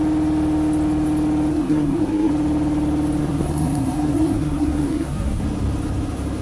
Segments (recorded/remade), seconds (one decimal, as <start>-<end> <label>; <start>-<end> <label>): 0.0-1.5 recorded; 1.5-2.3 remade; 2.3-3.2 recorded; 3.2-5.4 remade; 5.4-6.4 recorded